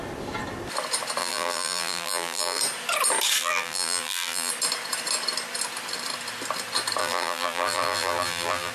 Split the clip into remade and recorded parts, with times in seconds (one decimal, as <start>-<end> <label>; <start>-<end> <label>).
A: 0.0-1.2 recorded; 1.2-2.6 remade; 2.6-3.4 recorded; 3.4-4.5 remade; 4.5-7.0 recorded; 7.0-8.7 remade